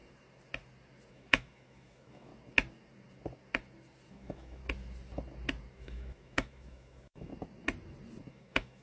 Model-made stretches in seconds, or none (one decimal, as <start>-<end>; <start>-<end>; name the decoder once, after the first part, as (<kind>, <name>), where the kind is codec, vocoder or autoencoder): 1.1-2.3 (autoencoder, DAC-VAE); 4.1-4.6; 5.7-7.3; 8.3-8.8